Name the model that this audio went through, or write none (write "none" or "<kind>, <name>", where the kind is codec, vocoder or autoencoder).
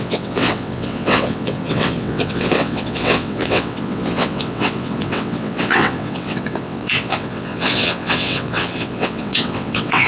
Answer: vocoder, WaveNeXt